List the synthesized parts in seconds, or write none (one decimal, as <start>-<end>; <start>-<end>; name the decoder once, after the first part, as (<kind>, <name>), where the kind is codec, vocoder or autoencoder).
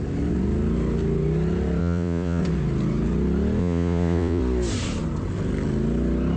1.8-2.4 (vocoder, Vocos); 3.6-4.4